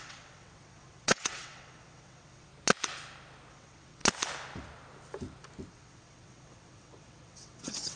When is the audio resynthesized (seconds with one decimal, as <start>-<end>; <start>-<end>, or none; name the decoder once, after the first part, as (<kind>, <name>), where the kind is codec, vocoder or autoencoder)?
0.0-2.5 (vocoder, WaveNeXt); 3.5-4.0; 5.7-8.0